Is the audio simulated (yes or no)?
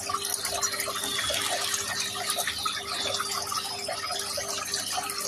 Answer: no